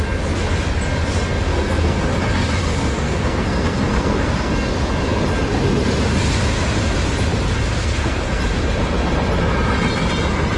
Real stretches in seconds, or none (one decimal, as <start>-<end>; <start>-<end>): 0.0-1.5; 2.1-2.6; 4.5-7.8; 8.4-10.6